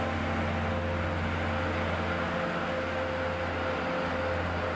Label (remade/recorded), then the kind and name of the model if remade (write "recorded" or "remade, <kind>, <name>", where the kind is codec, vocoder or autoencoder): recorded